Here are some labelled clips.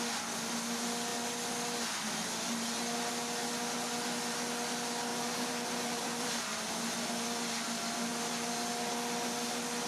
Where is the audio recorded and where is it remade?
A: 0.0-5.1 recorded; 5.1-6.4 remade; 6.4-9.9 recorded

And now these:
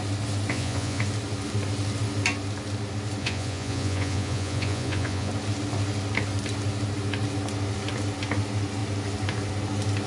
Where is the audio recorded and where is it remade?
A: 0.0-0.5 recorded; 0.5-1.0 remade; 1.0-3.2 recorded; 3.2-5.3 remade; 5.3-10.1 recorded

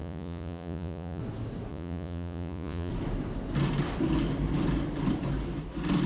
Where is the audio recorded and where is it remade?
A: 0.0-1.2 remade; 1.2-1.7 recorded; 1.7-2.9 remade; 2.9-6.1 recorded

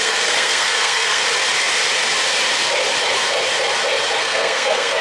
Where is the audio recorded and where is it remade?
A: 0.0-1.2 remade; 1.2-4.2 recorded; 4.2-5.0 remade

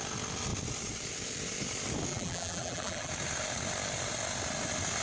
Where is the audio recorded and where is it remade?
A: 0.0-2.1 recorded; 2.1-3.1 remade; 3.1-5.0 recorded

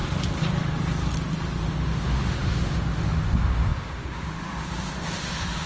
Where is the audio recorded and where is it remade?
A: 0.0-1.6 recorded; 1.6-5.7 remade

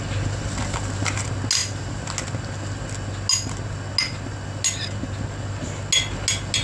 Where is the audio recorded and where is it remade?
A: 0.0-6.6 recorded

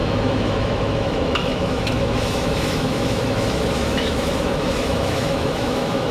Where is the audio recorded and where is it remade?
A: 0.0-6.1 remade